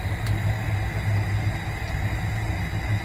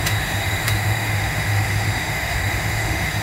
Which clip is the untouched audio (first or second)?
first